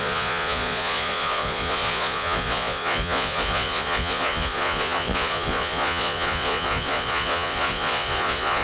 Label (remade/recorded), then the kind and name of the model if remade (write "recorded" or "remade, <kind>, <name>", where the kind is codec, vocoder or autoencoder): remade, vocoder, Vocos